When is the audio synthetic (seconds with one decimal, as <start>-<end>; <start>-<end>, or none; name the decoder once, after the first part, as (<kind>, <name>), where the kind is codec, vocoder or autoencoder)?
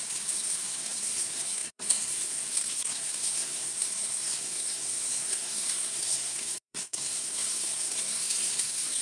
0.0-9.0 (codec, SNAC)